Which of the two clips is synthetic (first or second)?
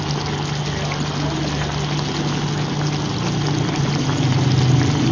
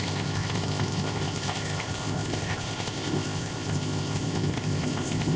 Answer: second